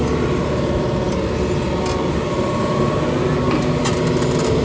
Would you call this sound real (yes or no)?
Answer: yes